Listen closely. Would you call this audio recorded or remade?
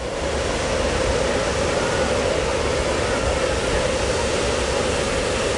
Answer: recorded